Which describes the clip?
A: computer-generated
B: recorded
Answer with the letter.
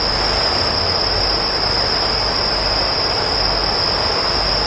B